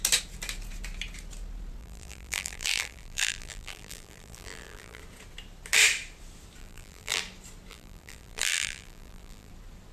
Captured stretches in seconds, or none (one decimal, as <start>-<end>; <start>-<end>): 0.0-1.8; 5.0-6.6; 7.2-7.7; 9.5-9.9